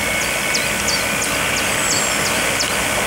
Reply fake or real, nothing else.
real